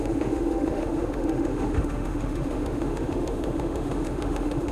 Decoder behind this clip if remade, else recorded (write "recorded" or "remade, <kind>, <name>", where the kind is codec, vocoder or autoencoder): remade, autoencoder, DAC-VAE